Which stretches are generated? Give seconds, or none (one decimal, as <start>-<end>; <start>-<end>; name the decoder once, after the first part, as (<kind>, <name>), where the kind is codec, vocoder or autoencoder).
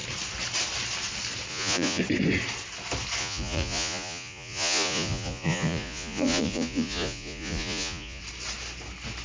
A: 1.5-2.0 (vocoder, Vocos); 3.2-8.2